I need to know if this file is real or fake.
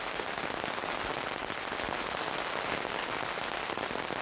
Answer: real